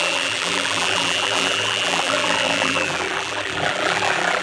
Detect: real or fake fake